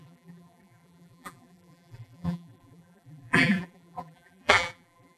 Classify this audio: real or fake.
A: fake